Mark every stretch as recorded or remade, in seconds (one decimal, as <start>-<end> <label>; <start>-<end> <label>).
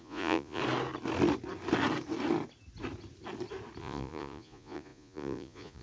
0.0-0.6 remade; 0.6-3.8 recorded; 3.8-5.8 remade